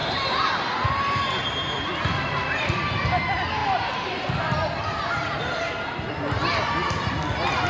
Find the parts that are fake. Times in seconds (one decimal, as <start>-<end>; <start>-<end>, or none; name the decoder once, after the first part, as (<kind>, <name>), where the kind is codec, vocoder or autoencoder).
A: 0.0-2.9 (vocoder, BigVGAN v2); 3.6-6.1